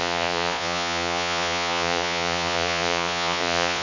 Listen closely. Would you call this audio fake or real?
fake